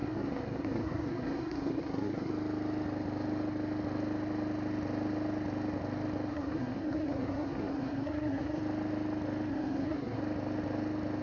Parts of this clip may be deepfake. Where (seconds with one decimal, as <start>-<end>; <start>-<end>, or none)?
0.0-2.3; 6.3-8.6; 9.5-10.2